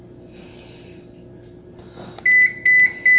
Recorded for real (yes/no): yes